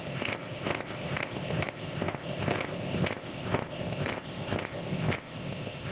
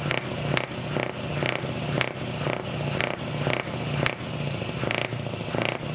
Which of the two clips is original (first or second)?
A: second